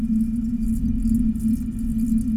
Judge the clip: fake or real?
real